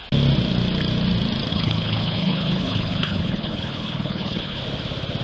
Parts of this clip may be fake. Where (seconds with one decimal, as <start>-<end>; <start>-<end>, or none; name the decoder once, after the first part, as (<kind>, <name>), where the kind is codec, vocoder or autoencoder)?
1.5-4.6 (codec, HILCodec)